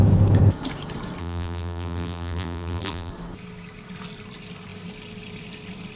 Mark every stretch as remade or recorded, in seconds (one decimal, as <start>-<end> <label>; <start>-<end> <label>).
0.0-1.2 recorded; 1.2-3.1 remade; 3.1-5.9 recorded